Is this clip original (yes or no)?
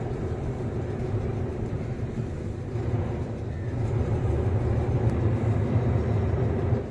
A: yes